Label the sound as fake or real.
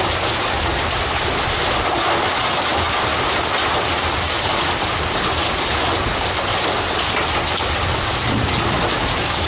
real